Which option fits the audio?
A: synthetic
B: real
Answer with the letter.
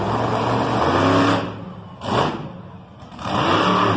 B